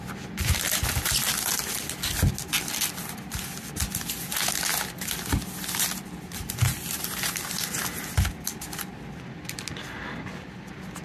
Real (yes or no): yes